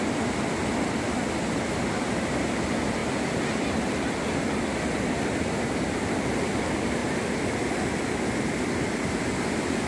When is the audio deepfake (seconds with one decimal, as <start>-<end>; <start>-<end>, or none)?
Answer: none